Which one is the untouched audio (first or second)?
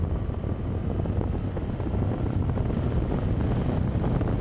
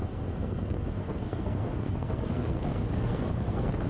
first